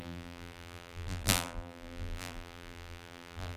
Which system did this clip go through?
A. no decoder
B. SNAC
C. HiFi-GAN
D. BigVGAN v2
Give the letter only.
D